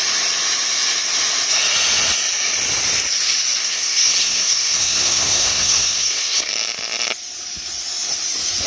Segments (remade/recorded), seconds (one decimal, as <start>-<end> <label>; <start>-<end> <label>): 0.0-3.6 recorded; 3.6-6.5 remade; 6.5-8.7 recorded